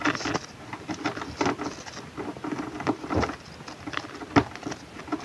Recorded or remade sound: recorded